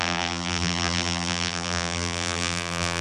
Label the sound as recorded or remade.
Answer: remade